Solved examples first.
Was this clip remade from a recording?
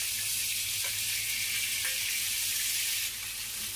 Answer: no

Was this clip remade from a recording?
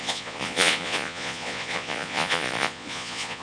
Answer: yes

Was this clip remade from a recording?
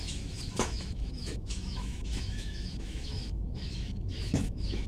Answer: yes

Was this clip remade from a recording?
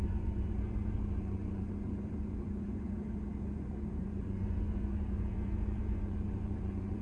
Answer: yes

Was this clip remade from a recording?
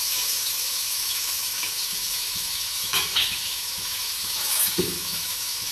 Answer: yes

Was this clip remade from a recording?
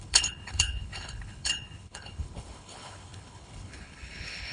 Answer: yes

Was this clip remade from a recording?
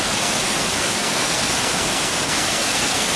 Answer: yes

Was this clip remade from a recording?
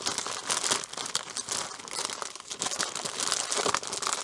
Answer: no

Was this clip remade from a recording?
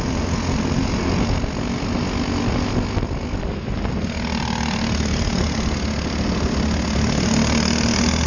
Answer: no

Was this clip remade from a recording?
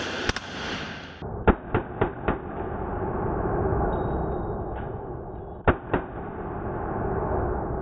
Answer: no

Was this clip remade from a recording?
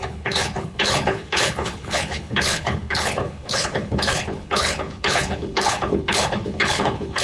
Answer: yes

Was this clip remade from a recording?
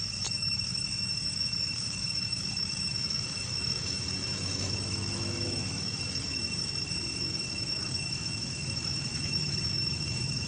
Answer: yes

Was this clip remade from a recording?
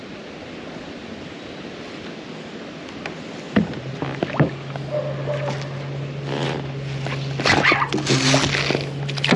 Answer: no